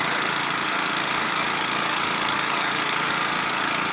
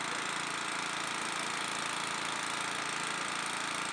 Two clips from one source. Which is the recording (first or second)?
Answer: second